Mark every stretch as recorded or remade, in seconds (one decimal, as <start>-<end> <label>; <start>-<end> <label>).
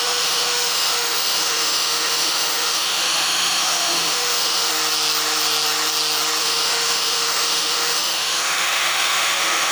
0.0-4.7 remade; 4.7-6.4 recorded; 6.4-9.7 remade